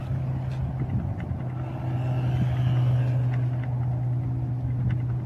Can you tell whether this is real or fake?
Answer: real